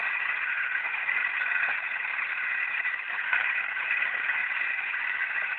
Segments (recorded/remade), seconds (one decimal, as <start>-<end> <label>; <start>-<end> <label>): 0.0-1.2 remade; 1.2-2.3 recorded; 2.3-5.6 remade